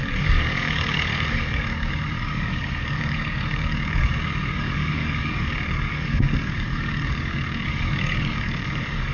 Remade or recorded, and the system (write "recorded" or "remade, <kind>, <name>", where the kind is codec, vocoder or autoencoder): remade, codec, DAC